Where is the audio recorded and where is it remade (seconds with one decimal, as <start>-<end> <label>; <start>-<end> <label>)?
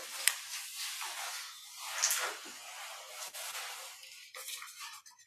0.0-5.3 recorded